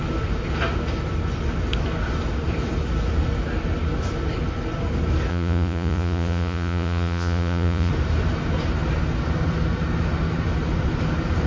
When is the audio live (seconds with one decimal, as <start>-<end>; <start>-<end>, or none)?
0.0-5.3; 7.9-11.5